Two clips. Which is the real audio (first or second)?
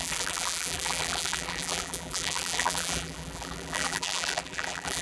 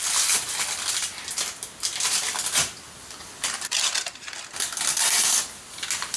second